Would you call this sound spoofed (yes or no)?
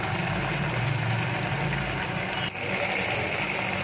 no